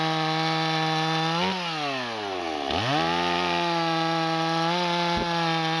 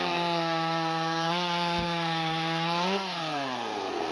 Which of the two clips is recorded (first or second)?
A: first